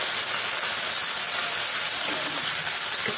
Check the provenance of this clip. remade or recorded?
recorded